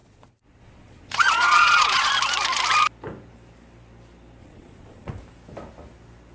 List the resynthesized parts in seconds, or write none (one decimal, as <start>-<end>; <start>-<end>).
0.0-2.1; 4.4-5.1